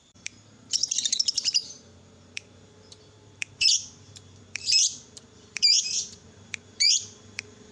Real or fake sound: fake